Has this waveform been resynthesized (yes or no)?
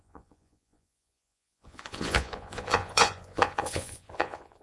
yes